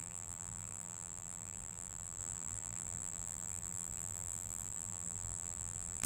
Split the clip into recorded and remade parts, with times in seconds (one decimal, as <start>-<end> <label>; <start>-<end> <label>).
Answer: 0.0-6.1 remade